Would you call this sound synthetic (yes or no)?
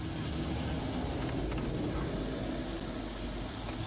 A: no